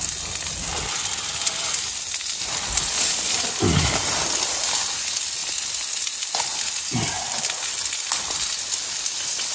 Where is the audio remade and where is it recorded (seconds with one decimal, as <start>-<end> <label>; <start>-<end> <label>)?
0.0-9.5 recorded